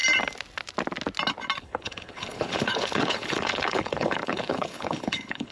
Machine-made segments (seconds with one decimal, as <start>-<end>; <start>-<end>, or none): 1.6-5.5